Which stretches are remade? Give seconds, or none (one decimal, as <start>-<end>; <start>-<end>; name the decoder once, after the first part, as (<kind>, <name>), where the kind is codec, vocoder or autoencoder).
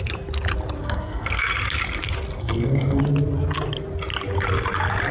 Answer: 0.8-1.4 (codec, SNAC); 2.4-3.0